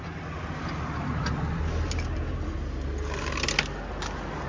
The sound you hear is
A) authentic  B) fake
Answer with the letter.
A